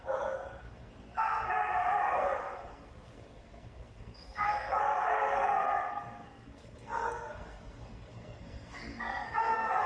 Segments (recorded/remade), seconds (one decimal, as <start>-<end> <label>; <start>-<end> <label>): 0.0-9.9 remade